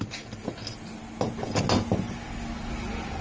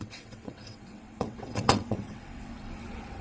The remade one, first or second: second